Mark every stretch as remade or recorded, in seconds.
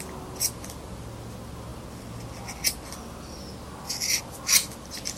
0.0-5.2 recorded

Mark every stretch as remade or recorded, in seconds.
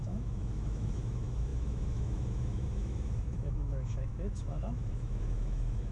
0.0-5.9 remade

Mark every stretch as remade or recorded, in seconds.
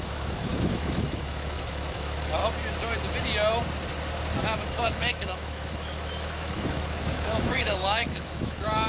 0.0-2.4 remade; 2.4-4.4 recorded; 4.4-8.9 remade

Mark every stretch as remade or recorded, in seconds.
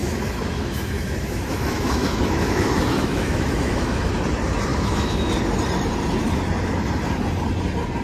0.0-4.1 remade; 4.1-4.7 recorded; 4.7-5.3 remade; 5.3-8.0 recorded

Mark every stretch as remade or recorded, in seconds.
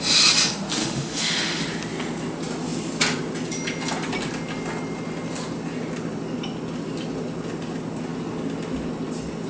0.0-0.8 recorded; 0.8-1.6 remade; 1.6-9.5 recorded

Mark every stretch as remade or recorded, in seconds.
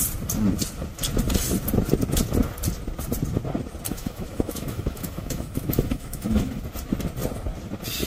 0.0-3.9 recorded; 3.9-6.6 remade; 6.6-8.1 recorded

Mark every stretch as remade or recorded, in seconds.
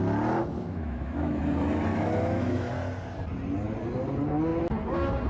0.0-0.4 recorded; 0.4-1.4 remade; 1.4-1.9 recorded; 1.9-2.7 remade; 2.7-5.3 recorded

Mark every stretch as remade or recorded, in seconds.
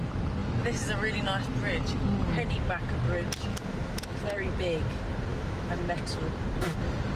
0.0-3.5 recorded; 3.5-4.2 remade; 4.2-5.3 recorded; 5.3-5.8 remade; 5.8-7.2 recorded